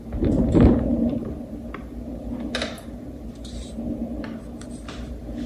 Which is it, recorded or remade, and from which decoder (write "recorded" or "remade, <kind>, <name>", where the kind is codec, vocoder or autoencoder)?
remade, vocoder, BigVGAN v2